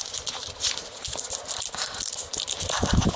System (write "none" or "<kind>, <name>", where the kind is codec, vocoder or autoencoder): none